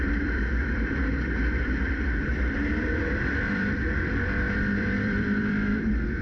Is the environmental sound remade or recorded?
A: remade